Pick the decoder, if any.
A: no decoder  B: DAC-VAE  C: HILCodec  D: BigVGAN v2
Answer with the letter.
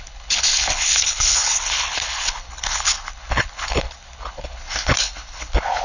C